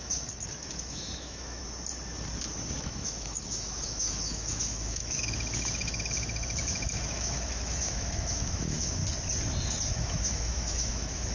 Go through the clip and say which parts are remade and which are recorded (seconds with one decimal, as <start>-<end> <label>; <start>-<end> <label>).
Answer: 0.0-1.6 remade; 1.6-2.8 recorded; 2.8-9.0 remade; 9.0-9.9 recorded; 9.9-11.3 remade